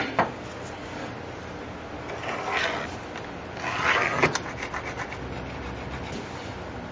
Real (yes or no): yes